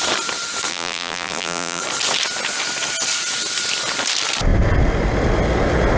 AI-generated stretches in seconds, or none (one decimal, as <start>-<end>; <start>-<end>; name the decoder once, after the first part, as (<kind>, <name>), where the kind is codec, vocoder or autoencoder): 0.7-1.8 (vocoder, BigVGAN v2)